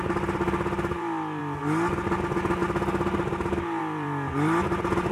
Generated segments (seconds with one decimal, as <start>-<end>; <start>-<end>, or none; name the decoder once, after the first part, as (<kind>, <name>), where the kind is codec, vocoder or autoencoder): 0.0-1.4 (vocoder, BigVGAN v2); 3.8-5.1